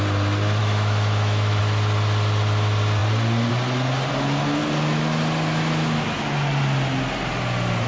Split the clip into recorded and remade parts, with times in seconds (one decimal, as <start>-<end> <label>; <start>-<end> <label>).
0.0-0.6 recorded; 0.6-1.6 remade; 1.6-7.9 recorded

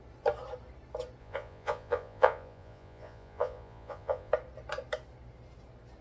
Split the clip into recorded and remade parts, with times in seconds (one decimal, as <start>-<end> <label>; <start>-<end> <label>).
0.0-1.2 recorded; 1.2-4.3 remade; 4.3-6.0 recorded